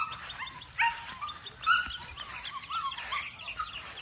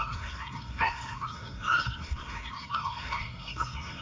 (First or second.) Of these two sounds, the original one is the first